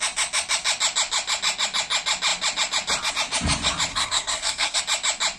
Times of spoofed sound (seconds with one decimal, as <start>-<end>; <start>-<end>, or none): 3.9-4.8